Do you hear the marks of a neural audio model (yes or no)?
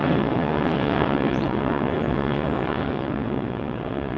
yes